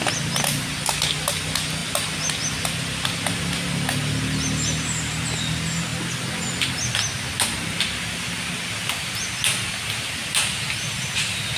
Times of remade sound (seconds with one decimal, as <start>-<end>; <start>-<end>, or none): none